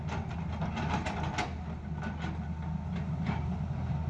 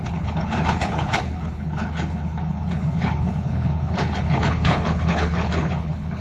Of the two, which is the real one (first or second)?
first